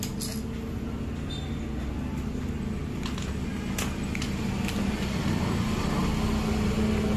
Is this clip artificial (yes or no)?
no